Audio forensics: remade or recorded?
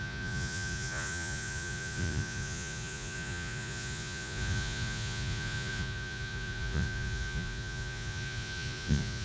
remade